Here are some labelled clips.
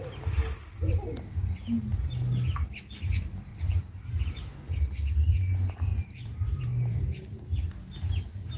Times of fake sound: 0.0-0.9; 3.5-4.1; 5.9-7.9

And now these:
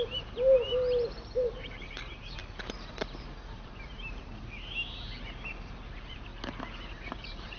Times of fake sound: 0.0-2.4; 2.9-4.3; 5.5-6.3; 7.1-7.6

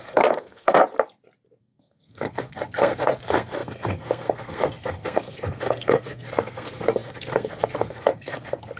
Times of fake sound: 0.0-0.8; 1.6-8.8